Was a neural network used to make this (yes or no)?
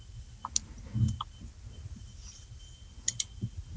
no